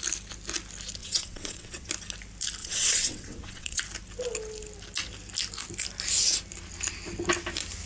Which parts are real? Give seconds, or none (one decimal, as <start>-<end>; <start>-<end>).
0.0-1.0; 1.9-2.6; 3.8-7.9